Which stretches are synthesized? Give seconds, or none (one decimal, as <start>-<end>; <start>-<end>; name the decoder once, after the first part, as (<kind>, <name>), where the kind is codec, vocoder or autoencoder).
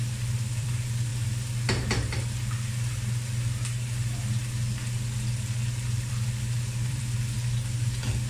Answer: 0.0-1.1 (vocoder, BigVGAN v2); 6.1-8.3